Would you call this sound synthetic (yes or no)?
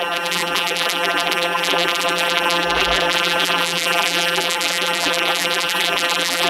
yes